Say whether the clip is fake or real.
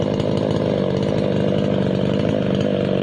real